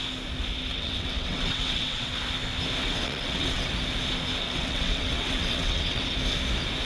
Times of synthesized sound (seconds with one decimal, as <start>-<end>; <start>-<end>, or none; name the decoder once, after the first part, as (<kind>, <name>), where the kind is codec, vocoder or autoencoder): 0.7-2.1 (vocoder, WaveNeXt); 2.8-3.7; 4.4-6.0